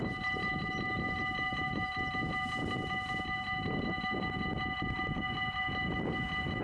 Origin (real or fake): real